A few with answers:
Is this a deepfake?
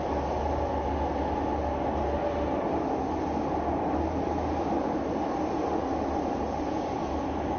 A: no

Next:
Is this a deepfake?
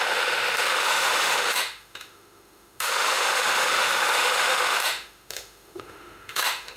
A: yes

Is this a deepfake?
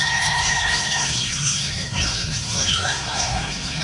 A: yes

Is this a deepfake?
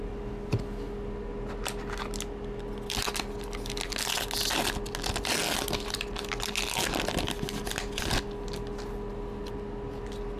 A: no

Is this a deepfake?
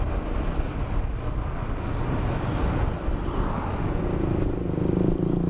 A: no